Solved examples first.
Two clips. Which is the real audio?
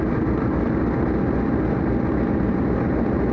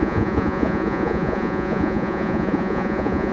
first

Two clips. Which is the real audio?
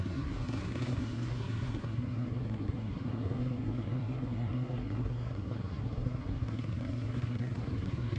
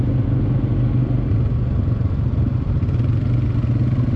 second